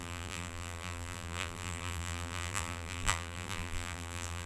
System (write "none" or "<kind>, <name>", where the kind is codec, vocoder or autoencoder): vocoder, BigVGAN v2